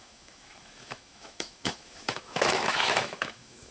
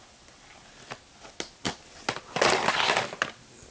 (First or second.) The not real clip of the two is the first